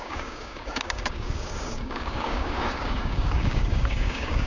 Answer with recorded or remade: remade